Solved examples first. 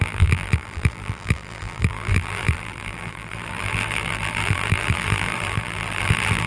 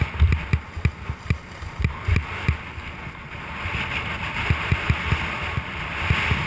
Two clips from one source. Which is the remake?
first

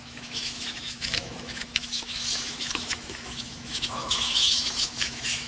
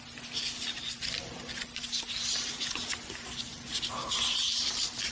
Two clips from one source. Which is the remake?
first